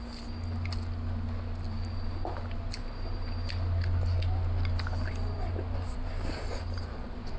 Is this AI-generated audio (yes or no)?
no